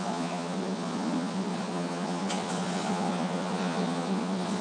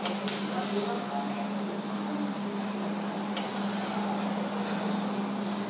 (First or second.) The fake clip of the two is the first